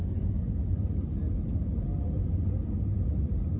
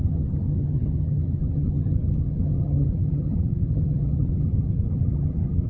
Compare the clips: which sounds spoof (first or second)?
second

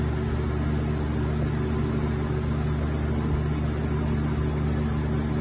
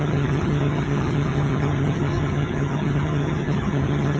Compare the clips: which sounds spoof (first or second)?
second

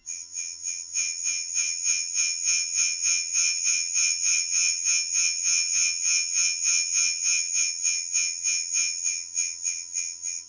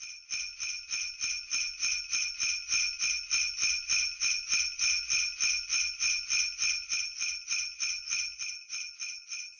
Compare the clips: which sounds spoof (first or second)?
first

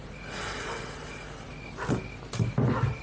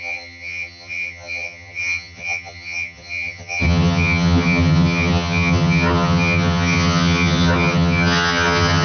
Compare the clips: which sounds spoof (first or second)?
second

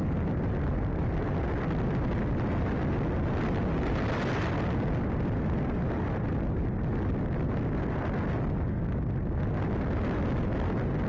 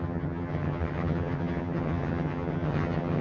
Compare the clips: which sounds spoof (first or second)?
second